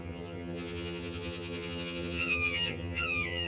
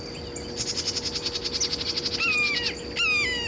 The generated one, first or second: first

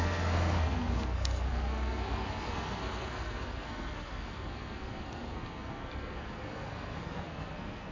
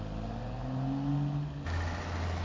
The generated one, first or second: first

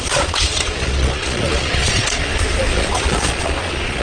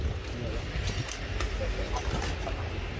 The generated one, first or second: first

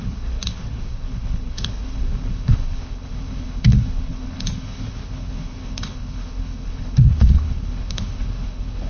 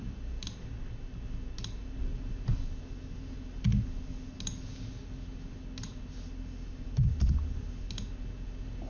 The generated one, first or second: first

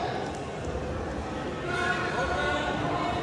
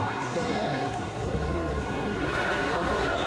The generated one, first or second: second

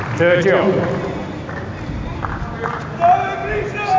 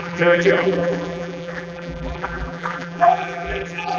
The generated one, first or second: second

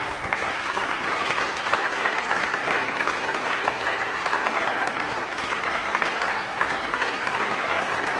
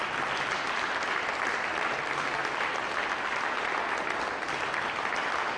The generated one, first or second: first